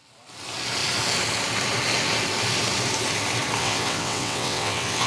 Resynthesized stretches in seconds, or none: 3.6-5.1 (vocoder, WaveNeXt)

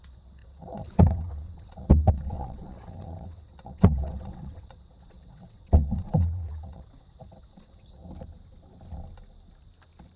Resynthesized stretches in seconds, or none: 0.0-8.0 (vocoder, WaveNeXt)

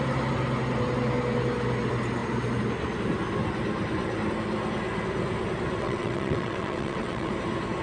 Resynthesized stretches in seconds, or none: 5.8-7.3 (vocoder, WaveNeXt)

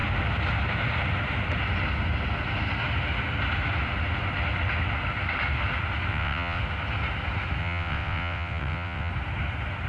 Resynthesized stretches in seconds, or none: 6.1-6.6 (vocoder, WaveNeXt); 7.6-9.1

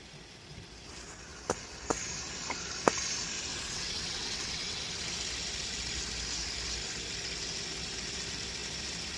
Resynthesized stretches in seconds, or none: 3.5-4.8 (vocoder, WaveNeXt)

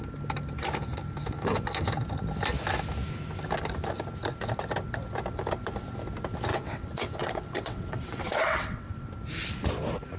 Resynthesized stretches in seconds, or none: 6.5-9.1 (vocoder, WaveNeXt)